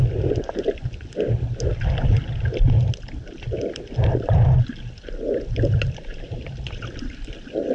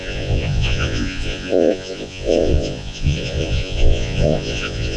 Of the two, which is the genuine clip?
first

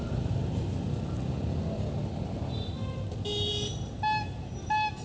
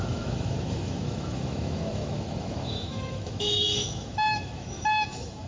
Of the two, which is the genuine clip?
first